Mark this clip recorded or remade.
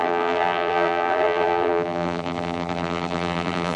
remade